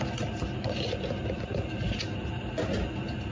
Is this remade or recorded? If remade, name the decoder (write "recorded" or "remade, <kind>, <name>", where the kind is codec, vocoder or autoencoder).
recorded